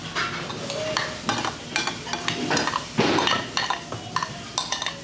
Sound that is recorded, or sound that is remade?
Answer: recorded